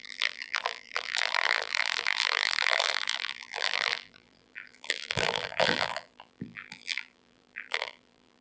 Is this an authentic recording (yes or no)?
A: no